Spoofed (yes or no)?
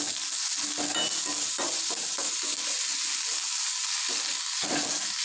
no